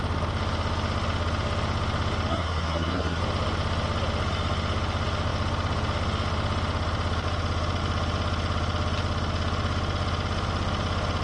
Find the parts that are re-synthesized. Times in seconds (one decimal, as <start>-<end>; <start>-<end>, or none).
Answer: 2.3-3.2